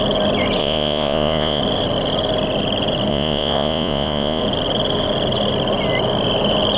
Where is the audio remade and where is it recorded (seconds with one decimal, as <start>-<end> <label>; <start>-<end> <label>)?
0.0-0.6 recorded; 0.6-1.6 remade; 1.6-3.1 recorded; 3.1-4.4 remade; 4.4-6.8 recorded